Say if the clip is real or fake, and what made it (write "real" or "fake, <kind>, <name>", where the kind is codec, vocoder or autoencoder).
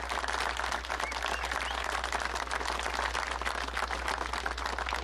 real